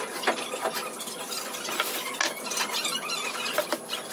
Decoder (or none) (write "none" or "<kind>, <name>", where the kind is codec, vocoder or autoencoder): none